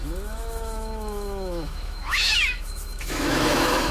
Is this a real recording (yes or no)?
no